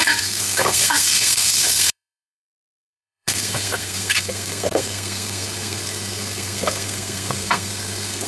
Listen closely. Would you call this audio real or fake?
fake